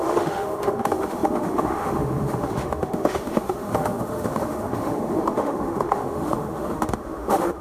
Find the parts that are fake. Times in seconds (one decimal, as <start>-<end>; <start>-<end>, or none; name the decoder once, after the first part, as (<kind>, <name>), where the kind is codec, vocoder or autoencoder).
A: 0.0-7.6 (autoencoder, DAC-VAE)